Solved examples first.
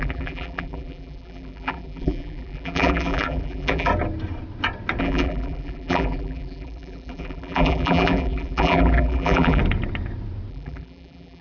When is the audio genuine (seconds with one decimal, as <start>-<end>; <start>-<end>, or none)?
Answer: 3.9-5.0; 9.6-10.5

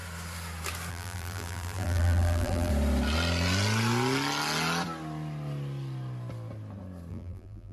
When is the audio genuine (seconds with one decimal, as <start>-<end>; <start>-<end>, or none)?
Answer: 0.0-0.9; 2.7-7.1

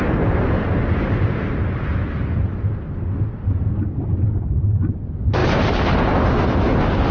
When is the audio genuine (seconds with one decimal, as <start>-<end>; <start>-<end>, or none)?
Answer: 0.0-1.9; 4.6-7.1

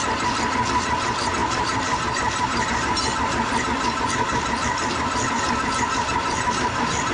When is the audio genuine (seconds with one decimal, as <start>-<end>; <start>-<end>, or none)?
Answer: 0.0-1.4; 2.8-7.1

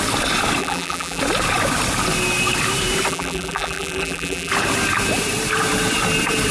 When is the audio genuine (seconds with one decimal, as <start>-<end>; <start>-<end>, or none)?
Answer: 0.0-0.6; 1.2-3.1; 4.5-6.5